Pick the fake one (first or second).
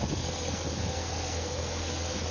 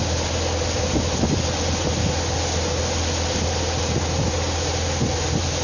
first